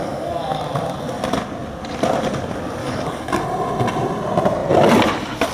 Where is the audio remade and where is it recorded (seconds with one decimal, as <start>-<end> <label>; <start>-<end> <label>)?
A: 0.0-0.6 remade; 0.6-2.8 recorded; 2.8-3.4 remade; 3.4-5.5 recorded